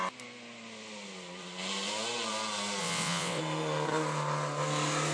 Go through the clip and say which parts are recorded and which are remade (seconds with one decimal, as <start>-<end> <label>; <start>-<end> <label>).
0.0-2.8 recorded; 2.8-3.4 remade; 3.4-5.1 recorded